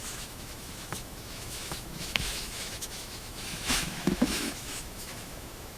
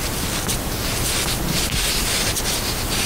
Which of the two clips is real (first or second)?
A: second